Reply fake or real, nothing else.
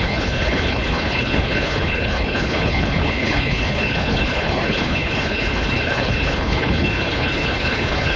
fake